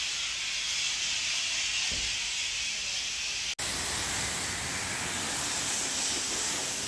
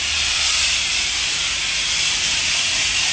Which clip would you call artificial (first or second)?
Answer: second